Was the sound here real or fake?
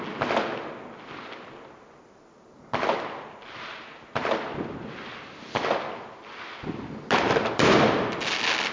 real